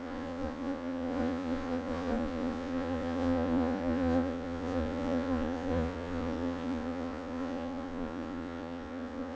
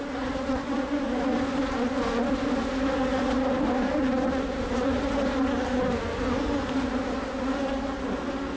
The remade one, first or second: first